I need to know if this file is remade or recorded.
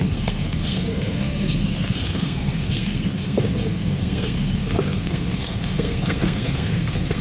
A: remade